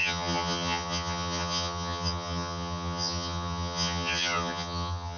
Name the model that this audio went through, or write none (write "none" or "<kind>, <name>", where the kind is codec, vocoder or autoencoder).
vocoder, HiFi-GAN